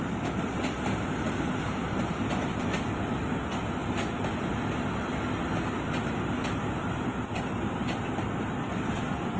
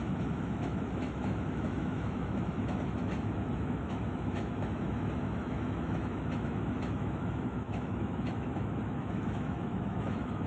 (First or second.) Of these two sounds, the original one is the first